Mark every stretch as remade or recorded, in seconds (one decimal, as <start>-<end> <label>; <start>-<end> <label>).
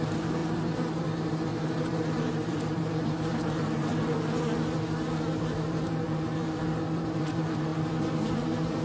0.0-0.4 remade; 0.4-1.0 recorded; 1.0-3.9 remade; 3.9-5.4 recorded; 5.4-8.8 remade